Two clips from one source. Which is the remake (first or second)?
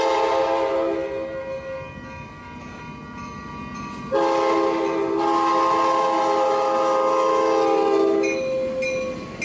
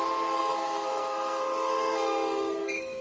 second